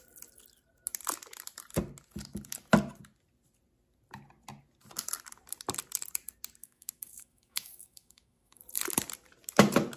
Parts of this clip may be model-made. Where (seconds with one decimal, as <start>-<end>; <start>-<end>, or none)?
6.6-8.6